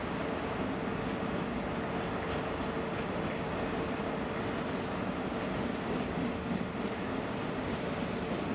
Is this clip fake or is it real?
real